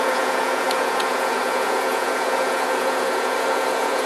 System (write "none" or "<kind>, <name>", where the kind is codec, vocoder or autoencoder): vocoder, Vocos